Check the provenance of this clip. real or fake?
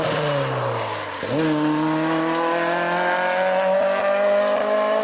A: real